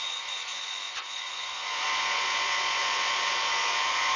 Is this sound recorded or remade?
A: remade